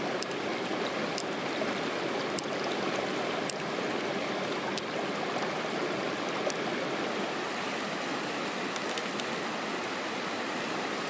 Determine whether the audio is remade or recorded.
recorded